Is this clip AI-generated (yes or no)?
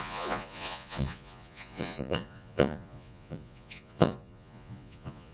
yes